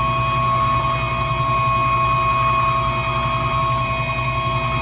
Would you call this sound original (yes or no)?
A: yes